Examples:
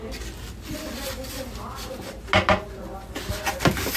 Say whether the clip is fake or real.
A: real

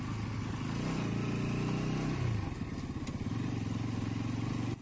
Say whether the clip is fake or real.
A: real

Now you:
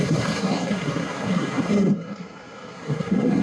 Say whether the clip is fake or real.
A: fake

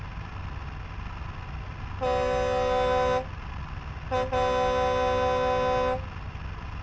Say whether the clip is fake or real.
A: real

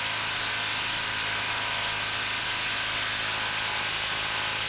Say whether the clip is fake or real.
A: real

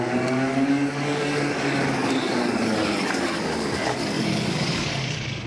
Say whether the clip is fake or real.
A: fake